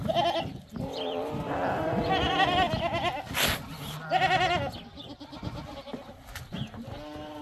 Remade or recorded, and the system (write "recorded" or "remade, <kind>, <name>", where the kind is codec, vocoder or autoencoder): recorded